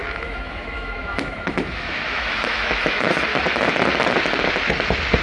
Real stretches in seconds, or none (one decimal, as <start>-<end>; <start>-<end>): 3.1-5.2